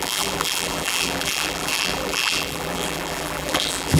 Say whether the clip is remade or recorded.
remade